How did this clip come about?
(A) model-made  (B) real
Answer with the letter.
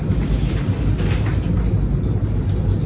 B